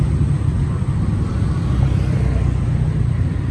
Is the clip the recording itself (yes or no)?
yes